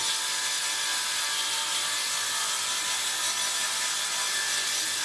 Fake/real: real